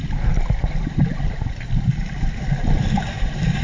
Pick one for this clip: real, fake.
real